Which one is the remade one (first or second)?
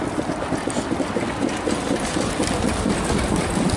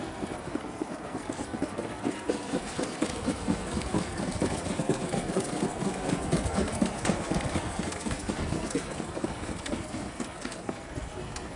second